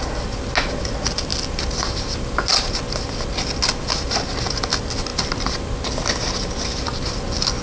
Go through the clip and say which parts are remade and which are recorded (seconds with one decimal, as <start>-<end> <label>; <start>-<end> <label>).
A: 0.0-7.6 recorded